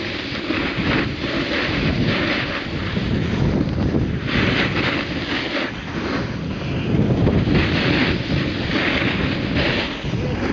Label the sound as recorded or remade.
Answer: recorded